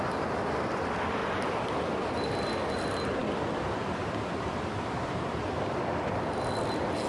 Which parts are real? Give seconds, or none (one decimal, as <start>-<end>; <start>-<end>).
0.0-7.1